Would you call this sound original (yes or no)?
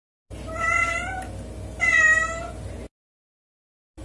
yes